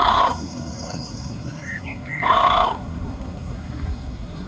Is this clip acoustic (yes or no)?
no